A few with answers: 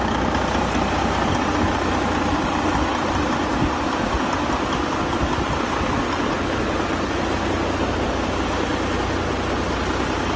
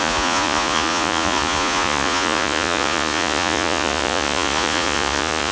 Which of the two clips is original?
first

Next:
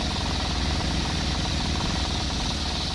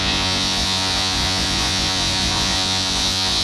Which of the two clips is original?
first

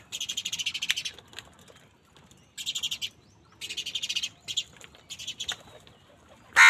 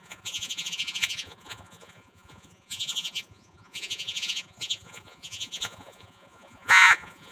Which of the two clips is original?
first